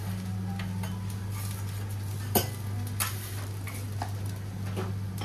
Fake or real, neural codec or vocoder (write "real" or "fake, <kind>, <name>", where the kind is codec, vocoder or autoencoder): real